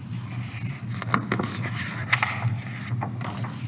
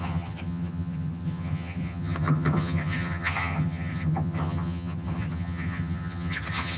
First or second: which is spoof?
second